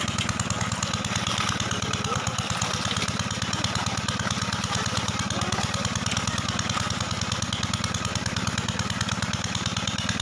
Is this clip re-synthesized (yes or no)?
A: no